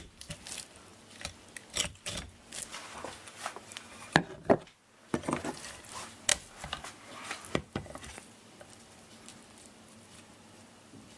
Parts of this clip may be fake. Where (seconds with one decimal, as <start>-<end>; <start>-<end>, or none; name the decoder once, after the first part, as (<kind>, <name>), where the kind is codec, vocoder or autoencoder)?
0.0-0.9 (vocoder, BigVGAN v2); 1.7-2.7; 3.4-6.3; 7.5-11.2